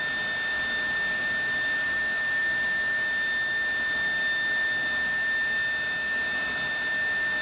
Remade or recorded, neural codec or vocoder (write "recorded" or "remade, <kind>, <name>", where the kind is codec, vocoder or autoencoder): recorded